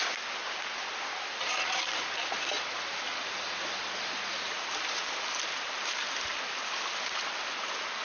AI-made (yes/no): no